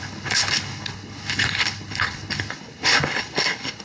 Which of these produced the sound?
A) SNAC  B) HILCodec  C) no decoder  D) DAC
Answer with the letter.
B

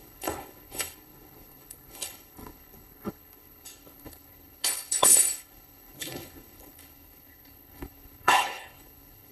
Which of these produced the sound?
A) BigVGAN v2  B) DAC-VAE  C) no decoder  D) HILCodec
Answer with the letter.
D